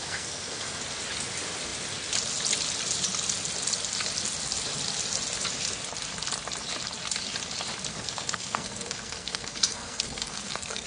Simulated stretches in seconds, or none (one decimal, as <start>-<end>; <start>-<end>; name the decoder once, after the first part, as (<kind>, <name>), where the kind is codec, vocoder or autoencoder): 0.0-0.8 (codec, SNAC); 7.9-10.9